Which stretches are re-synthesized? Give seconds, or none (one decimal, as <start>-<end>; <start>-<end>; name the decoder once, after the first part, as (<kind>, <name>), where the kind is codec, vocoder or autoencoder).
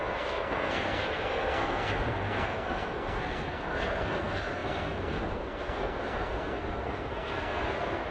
0.0-8.1 (codec, SNAC)